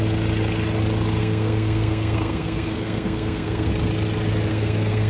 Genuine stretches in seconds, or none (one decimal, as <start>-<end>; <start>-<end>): 0.0-1.2; 3.7-4.5